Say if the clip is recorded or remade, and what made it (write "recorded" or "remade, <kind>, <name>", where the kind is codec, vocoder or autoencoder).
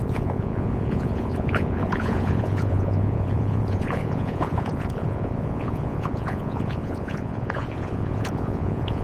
remade, vocoder, Vocos